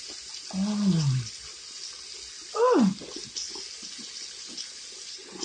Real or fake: real